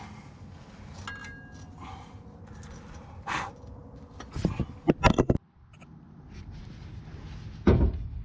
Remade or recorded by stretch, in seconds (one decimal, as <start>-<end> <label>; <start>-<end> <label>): 0.0-8.2 recorded